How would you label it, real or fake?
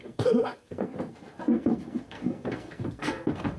fake